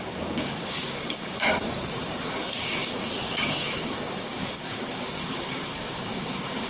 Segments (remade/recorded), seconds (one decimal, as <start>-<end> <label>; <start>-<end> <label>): 0.0-6.7 remade